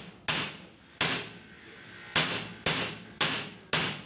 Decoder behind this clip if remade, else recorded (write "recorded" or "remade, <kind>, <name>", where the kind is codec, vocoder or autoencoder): recorded